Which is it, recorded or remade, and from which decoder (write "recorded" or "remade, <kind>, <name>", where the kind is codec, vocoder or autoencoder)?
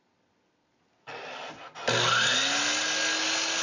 recorded